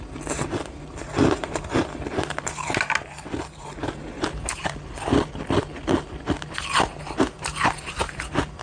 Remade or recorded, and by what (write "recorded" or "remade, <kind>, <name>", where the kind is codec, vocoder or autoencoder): recorded